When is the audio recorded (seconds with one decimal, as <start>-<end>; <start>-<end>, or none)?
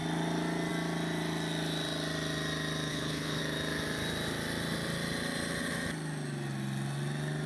0.0-2.9; 3.4-7.5